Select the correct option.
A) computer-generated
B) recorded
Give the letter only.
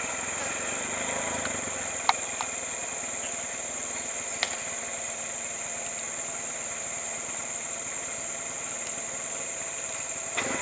B